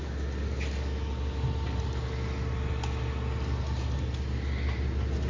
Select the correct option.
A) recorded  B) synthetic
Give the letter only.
A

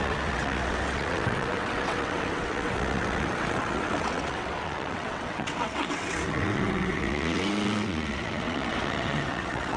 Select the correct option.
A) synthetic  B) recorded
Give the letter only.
A